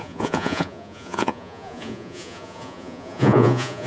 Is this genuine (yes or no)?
no